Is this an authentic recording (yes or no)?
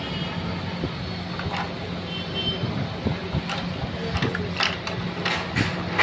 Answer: yes